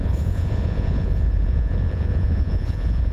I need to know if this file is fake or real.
fake